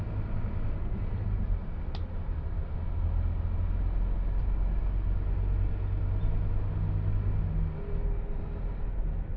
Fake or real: real